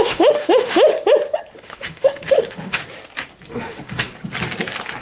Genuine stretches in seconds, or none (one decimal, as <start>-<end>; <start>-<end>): 0.9-1.6; 2.8-3.5; 4.1-5.0